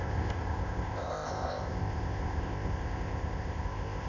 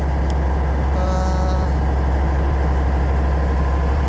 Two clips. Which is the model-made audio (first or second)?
first